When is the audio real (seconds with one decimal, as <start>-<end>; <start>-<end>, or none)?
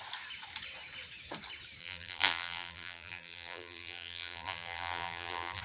0.0-1.8